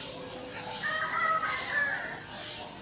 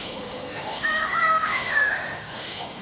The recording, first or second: first